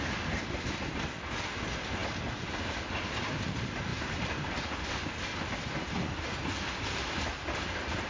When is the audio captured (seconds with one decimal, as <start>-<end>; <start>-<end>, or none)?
0.0-8.1